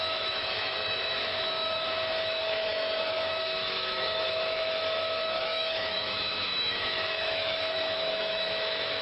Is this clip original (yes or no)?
no